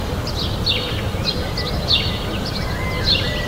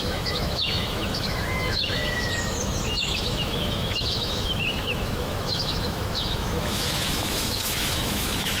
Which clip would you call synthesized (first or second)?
second